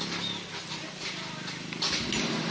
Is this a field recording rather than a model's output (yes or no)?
yes